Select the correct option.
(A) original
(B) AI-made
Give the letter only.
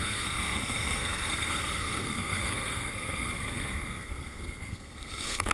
B